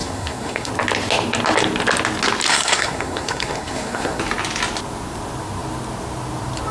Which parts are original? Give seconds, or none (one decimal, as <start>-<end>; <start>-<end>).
0.7-2.5; 4.2-6.7